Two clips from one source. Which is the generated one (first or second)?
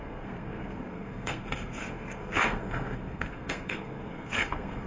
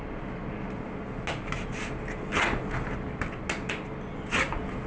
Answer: first